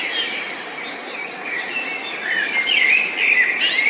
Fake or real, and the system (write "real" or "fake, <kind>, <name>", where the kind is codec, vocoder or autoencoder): real